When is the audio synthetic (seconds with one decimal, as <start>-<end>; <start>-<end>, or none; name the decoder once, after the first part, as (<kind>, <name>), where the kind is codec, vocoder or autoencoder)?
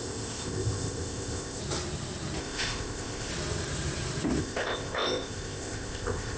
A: 0.0-1.6 (codec, ZipCodec); 2.4-3.3; 4.4-6.4